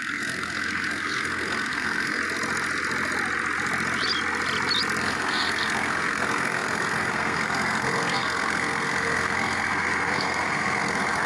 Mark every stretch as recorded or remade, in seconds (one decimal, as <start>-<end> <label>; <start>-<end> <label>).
0.0-2.2 remade; 2.2-5.0 recorded; 5.0-11.3 remade